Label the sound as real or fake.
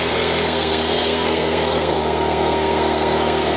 fake